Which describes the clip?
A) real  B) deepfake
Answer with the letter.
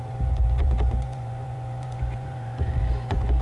B